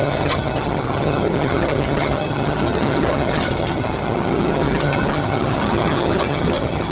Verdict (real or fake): fake